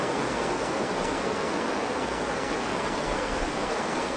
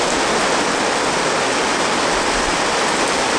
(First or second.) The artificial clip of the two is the first